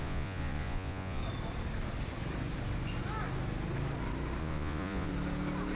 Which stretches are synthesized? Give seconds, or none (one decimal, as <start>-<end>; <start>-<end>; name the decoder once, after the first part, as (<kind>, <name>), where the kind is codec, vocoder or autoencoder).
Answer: 0.0-1.2 (vocoder, Vocos); 4.4-5.1